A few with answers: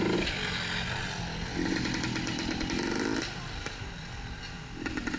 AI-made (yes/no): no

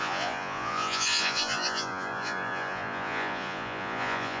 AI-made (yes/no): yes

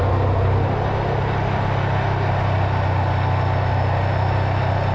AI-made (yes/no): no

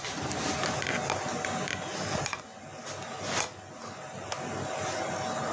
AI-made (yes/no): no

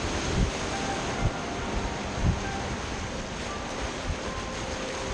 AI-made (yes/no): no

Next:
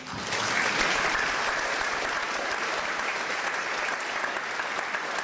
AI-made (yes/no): no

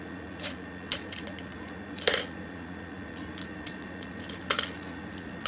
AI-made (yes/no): yes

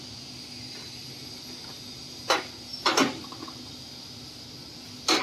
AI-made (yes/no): no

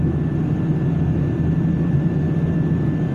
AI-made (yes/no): yes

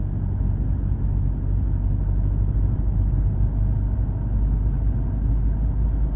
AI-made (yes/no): no